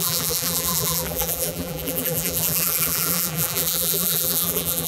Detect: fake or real fake